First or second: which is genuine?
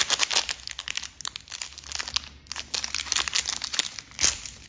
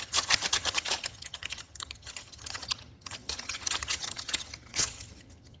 first